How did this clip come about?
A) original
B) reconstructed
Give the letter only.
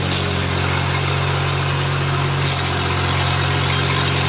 A